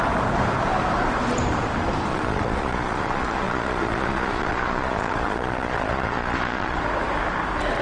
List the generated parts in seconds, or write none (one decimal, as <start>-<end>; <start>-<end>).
2.1-6.8